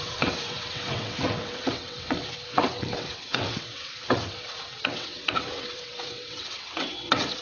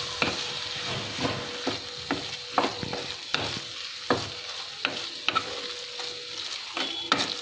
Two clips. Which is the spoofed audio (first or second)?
first